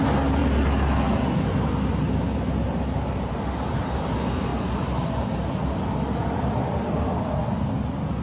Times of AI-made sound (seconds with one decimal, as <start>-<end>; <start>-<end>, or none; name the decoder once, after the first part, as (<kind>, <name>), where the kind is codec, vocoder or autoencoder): none